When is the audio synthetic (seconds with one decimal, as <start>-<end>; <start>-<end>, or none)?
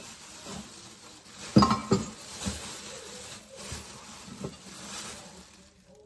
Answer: none